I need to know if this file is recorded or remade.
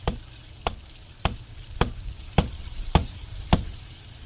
recorded